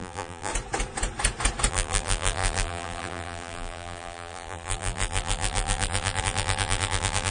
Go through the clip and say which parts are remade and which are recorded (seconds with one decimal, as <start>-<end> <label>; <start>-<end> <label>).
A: 0.0-0.5 remade; 0.5-1.7 recorded; 1.7-7.3 remade